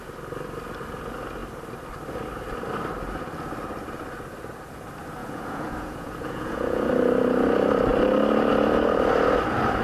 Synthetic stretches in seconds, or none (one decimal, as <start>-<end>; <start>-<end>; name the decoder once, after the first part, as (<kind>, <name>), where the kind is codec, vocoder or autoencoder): 5.2-6.9 (vocoder, Vocos)